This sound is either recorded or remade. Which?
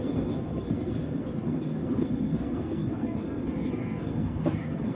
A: remade